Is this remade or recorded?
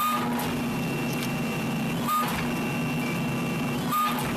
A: recorded